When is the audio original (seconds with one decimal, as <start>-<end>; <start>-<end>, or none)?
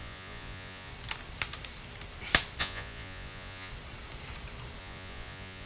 0.9-2.6; 3.7-4.8